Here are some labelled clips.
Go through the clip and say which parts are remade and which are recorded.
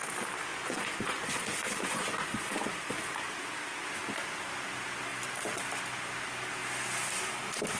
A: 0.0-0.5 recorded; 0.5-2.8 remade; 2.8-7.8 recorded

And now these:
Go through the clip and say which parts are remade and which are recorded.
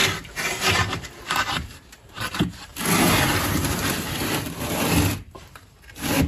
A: 0.0-0.6 recorded; 0.6-2.7 remade; 2.7-3.4 recorded; 3.4-4.2 remade; 4.2-5.4 recorded; 5.4-6.3 remade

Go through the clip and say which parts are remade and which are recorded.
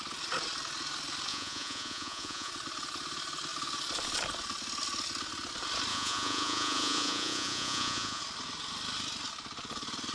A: 0.0-1.3 recorded; 1.3-2.5 remade; 2.5-5.9 recorded; 5.9-8.2 remade; 8.2-10.1 recorded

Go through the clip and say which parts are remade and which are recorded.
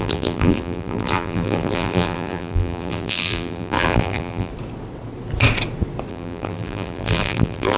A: 0.0-4.5 remade; 4.5-6.1 recorded; 6.1-7.8 remade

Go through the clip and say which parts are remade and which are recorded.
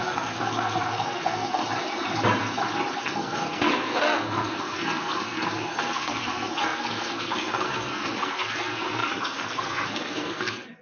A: 0.0-1.6 remade; 1.6-3.0 recorded; 3.0-10.8 remade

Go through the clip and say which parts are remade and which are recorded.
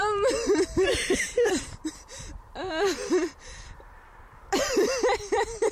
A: 0.0-5.7 remade